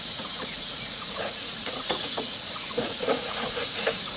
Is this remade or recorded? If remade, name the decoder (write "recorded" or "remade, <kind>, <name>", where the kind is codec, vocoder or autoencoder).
remade, vocoder, Vocos